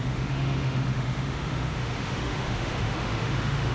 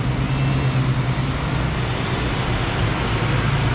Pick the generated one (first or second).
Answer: first